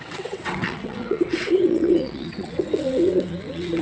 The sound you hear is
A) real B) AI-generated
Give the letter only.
B